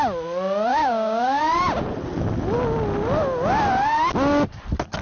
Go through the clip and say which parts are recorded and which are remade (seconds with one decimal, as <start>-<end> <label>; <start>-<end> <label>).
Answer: 0.0-0.7 recorded; 0.7-1.4 remade; 1.4-5.0 recorded